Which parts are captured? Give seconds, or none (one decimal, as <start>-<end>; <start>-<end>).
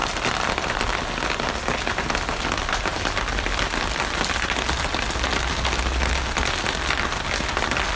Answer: 0.0-8.0